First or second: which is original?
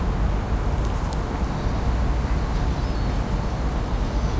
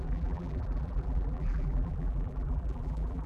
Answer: first